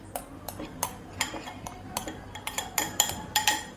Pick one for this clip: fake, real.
fake